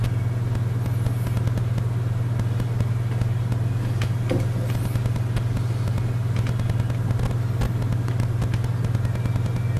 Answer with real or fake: real